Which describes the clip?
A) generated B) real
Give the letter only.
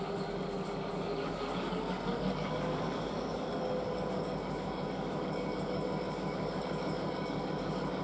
A